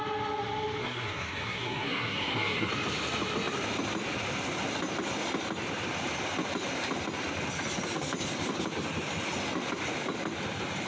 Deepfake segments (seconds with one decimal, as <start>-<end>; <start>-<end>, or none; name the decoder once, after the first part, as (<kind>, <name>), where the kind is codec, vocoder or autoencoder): 0.8-2.7 (codec, SNAC)